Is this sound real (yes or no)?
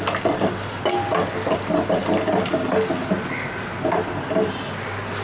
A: yes